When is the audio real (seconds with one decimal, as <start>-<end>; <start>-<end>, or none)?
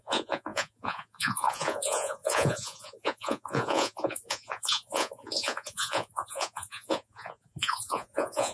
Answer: none